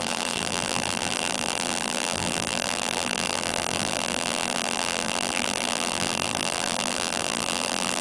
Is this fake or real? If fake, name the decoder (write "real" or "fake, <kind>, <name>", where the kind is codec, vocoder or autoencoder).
fake, vocoder, BigVGAN v2